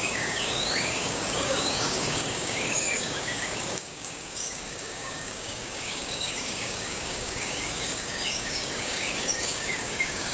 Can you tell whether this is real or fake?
fake